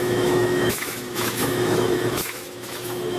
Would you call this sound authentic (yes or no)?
no